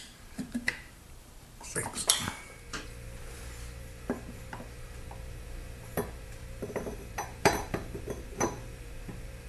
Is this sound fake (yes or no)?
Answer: yes